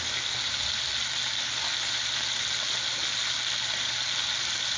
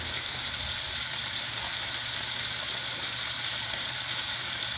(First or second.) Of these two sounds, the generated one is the second